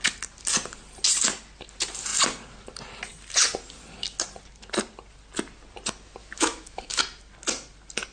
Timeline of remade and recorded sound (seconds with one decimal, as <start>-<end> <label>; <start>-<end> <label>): 0.0-6.2 recorded; 6.2-7.0 remade; 7.0-8.1 recorded